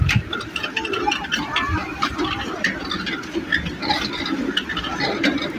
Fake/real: real